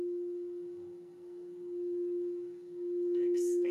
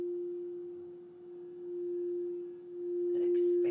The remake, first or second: first